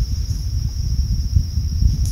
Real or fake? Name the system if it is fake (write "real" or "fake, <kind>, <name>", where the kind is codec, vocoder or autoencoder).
fake, vocoder, BigVGAN v2